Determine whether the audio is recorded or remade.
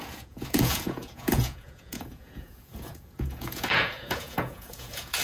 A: remade